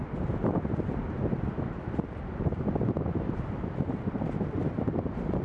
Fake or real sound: real